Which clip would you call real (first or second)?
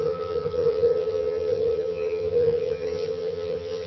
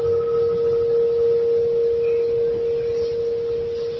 second